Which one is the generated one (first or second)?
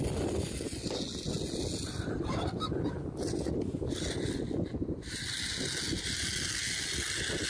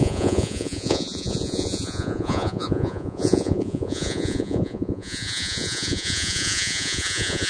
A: second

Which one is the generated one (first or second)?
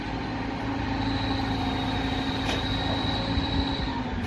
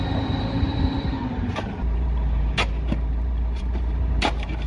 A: second